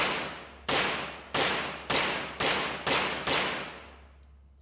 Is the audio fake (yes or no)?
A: no